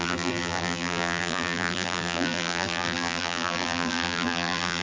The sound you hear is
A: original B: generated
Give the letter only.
B